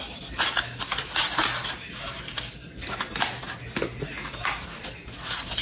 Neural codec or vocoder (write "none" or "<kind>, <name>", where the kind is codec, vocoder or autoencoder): none